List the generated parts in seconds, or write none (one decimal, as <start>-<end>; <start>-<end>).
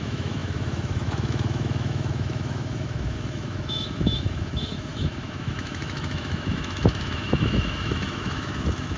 0.0-9.0